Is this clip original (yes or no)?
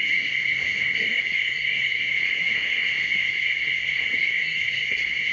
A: no